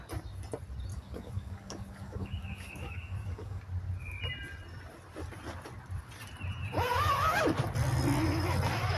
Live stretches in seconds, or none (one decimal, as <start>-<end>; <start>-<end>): 0.0-0.9; 3.6-9.0